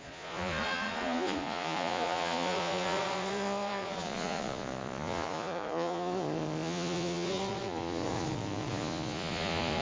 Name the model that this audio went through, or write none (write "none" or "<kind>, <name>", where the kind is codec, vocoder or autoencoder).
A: vocoder, Vocos